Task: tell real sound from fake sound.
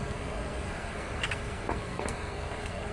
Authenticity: fake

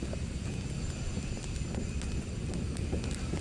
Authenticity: real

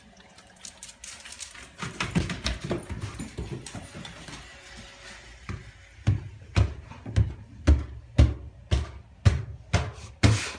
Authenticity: real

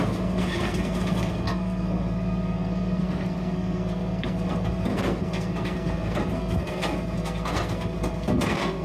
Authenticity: fake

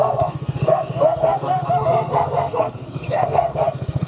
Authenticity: fake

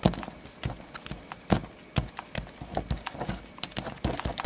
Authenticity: real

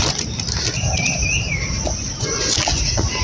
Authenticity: real